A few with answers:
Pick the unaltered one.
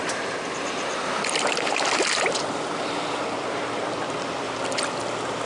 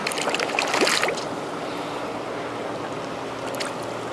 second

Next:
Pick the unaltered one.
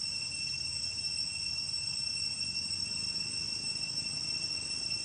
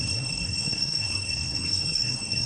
first